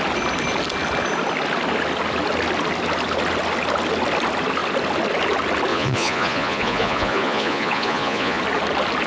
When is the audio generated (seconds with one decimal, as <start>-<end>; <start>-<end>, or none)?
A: 5.7-8.4